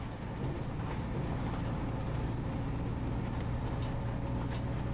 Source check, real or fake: real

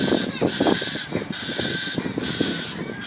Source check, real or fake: real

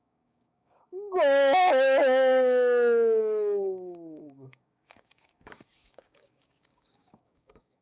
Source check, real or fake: fake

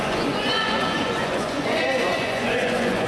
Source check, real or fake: fake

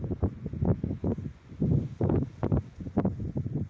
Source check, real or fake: fake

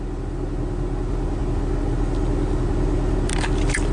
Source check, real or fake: real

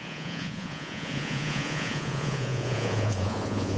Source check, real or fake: fake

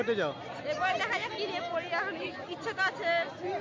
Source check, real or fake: real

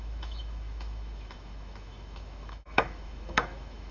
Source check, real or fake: fake